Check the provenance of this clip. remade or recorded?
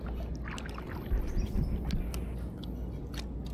recorded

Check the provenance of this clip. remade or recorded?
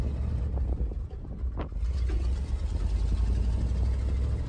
recorded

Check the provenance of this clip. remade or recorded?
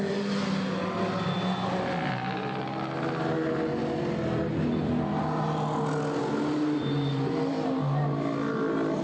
recorded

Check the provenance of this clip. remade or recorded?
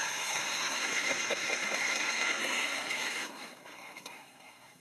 remade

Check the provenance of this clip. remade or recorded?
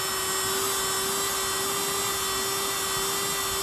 recorded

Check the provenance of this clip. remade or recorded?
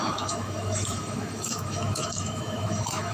remade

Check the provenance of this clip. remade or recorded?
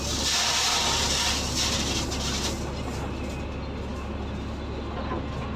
recorded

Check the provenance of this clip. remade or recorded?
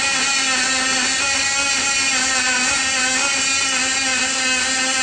recorded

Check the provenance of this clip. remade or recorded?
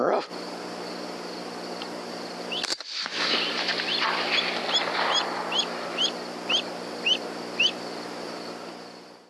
recorded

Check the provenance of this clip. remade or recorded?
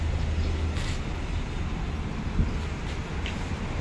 recorded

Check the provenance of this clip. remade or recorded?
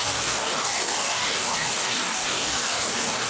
remade